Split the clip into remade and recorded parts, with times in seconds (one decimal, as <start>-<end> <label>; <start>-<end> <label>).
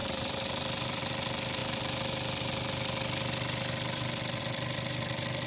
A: 0.0-1.0 remade; 1.0-5.5 recorded